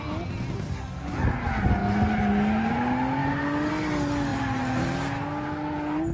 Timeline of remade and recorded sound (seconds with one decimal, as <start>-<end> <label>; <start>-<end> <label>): 0.0-4.3 recorded; 4.3-4.9 remade; 4.9-6.1 recorded